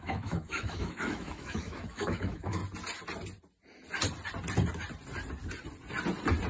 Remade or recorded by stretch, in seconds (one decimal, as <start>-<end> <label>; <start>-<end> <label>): 0.0-2.6 remade; 2.6-6.5 recorded